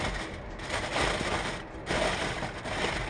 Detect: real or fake real